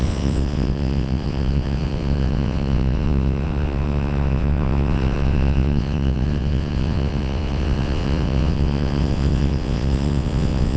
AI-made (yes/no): yes